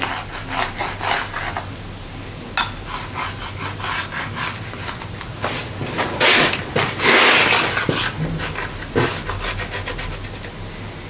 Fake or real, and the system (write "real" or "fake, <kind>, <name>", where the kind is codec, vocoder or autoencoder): real